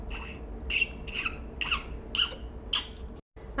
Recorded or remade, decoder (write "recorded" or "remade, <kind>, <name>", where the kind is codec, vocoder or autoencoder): recorded